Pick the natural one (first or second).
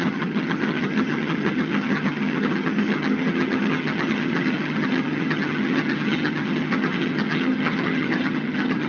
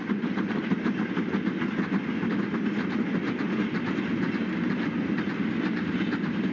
second